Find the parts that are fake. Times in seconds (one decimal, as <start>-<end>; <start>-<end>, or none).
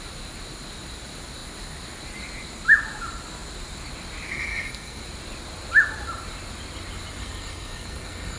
4.5-5.0; 7.2-8.4